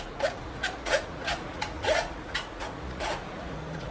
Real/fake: fake